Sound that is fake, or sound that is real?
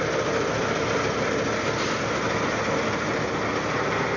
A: real